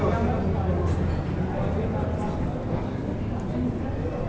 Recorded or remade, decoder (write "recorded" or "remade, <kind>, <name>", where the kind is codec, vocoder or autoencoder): recorded